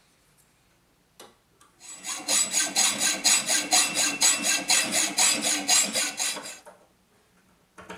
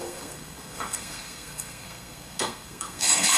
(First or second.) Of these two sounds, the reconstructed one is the second